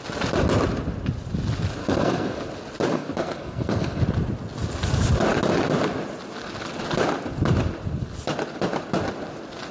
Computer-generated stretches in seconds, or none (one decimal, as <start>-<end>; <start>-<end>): 1.8-2.5; 2.9-4.0